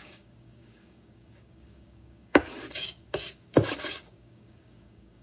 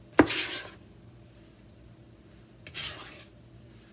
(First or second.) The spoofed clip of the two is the first